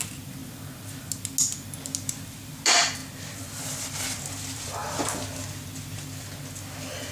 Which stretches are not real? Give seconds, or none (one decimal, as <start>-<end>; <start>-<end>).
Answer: 0.0-0.4; 2.3-4.8